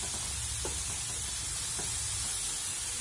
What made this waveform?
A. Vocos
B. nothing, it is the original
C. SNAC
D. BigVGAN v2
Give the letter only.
B